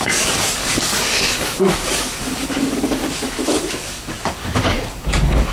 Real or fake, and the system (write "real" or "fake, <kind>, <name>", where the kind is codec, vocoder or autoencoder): fake, codec, DAC